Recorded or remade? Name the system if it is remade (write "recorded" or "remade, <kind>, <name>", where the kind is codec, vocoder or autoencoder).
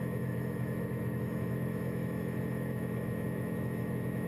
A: remade, autoencoder, DAC-VAE